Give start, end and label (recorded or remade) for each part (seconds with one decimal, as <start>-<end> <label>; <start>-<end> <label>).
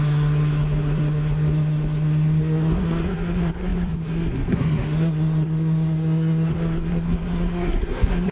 0.0-8.3 remade